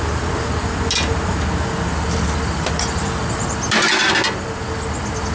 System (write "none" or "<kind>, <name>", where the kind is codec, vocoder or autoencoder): none